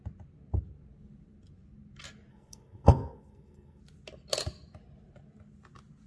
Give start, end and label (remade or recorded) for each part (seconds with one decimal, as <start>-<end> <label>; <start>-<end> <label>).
0.0-2.3 recorded; 2.3-3.8 remade; 3.8-6.1 recorded